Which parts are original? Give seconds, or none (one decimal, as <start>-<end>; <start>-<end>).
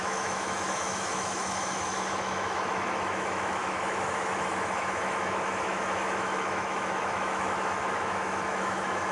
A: none